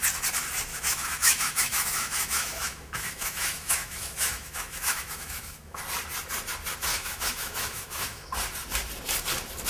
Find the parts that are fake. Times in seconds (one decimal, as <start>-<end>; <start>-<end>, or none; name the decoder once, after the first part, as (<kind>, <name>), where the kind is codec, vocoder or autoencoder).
0.7-5.8 (autoencoder, DAC-VAE); 6.9-8.3